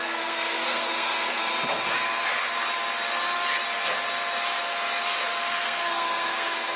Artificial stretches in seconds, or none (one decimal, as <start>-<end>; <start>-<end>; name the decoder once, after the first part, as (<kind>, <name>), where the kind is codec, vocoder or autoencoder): 0.0-1.4 (codec, SNAC); 5.5-6.8